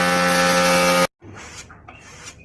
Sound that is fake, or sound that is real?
real